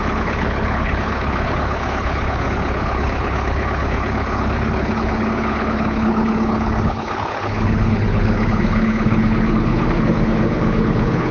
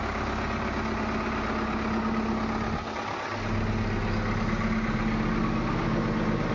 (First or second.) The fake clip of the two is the first